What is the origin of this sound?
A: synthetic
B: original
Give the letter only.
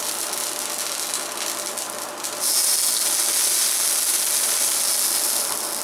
B